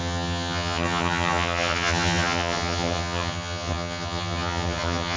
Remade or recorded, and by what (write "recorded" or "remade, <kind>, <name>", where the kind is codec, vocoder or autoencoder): remade, vocoder, HiFi-GAN